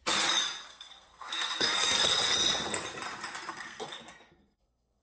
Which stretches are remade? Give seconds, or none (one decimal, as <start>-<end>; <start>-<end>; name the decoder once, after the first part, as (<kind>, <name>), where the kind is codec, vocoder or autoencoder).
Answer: 0.7-2.2 (codec, SNAC); 3.5-5.0